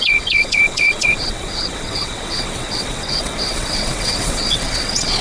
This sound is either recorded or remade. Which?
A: remade